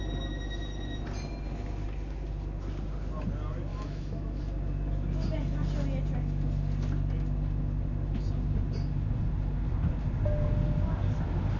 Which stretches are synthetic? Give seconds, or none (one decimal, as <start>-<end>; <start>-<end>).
3.7-4.4

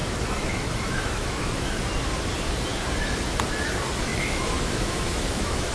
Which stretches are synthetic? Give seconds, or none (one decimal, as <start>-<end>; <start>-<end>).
0.0-1.8; 4.1-5.7

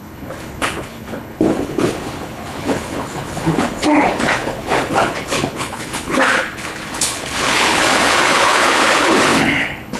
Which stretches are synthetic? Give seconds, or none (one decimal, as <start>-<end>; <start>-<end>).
0.0-10.0

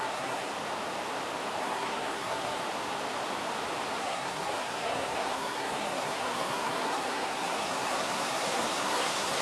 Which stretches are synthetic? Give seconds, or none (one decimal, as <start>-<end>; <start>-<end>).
0.0-0.5; 1.6-2.6; 4.0-9.4

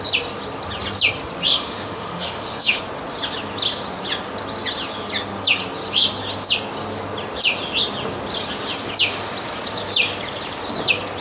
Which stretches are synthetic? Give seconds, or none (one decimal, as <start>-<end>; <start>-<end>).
1.5-2.8

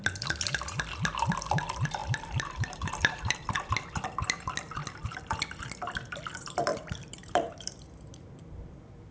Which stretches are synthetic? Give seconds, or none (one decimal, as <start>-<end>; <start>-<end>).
2.0-3.7; 6.7-7.5

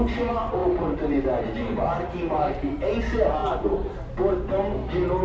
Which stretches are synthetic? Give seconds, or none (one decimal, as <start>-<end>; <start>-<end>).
0.6-3.0; 3.4-4.1